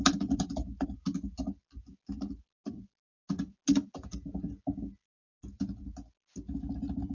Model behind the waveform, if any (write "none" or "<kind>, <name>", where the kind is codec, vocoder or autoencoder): none